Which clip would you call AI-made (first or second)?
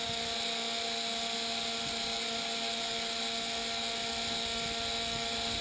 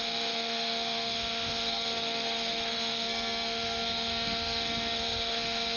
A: second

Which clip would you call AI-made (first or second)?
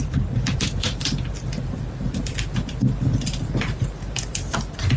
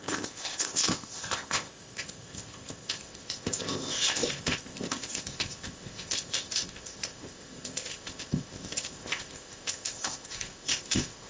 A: second